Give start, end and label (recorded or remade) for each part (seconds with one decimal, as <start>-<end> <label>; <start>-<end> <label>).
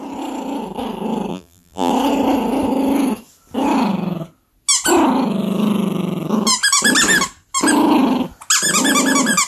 0.0-1.3 recorded; 1.3-1.9 remade; 1.9-9.5 recorded